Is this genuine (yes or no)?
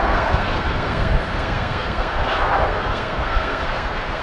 no